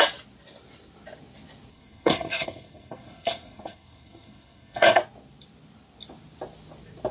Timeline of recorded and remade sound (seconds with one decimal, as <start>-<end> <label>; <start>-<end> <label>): 0.0-1.7 recorded; 1.7-5.0 remade; 5.0-7.1 recorded